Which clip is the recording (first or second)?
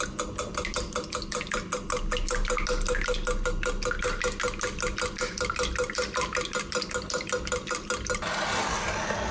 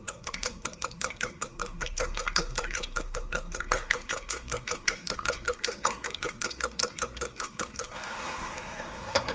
first